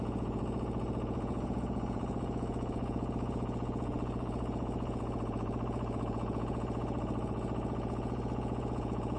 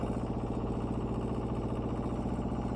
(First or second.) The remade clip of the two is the first